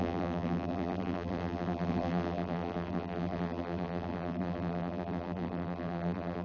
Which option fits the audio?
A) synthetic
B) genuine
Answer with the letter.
A